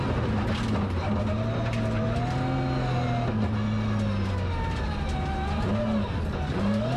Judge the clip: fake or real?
real